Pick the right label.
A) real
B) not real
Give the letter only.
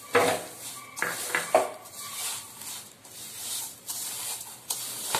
A